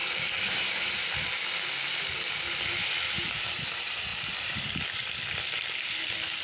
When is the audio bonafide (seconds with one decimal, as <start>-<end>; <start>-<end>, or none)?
0.0-3.5